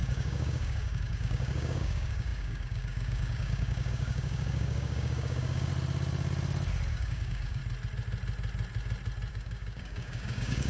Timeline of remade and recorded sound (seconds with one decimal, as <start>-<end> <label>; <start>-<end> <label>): 0.0-5.7 remade; 5.7-6.9 recorded; 6.9-7.6 remade; 7.6-9.3 recorded; 9.3-10.7 remade